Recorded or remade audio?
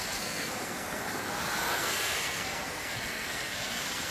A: remade